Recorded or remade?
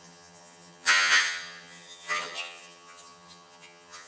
remade